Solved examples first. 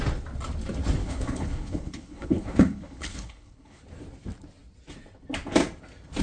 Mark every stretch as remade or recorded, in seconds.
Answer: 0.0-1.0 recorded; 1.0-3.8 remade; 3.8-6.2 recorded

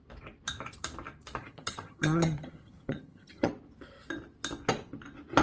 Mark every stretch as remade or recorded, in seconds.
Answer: 0.0-1.4 recorded; 1.4-3.5 remade; 3.5-5.4 recorded

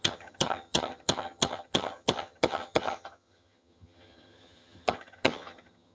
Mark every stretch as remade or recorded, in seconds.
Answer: 0.0-5.9 remade

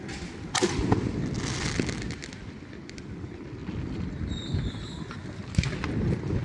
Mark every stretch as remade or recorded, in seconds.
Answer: 0.0-6.4 recorded